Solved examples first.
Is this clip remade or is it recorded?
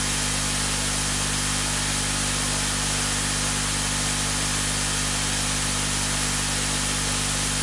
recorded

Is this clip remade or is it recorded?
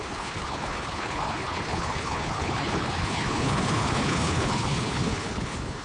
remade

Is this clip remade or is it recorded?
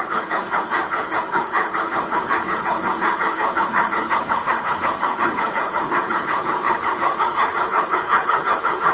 remade